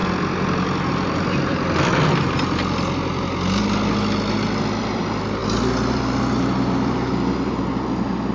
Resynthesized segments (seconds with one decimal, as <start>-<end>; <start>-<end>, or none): none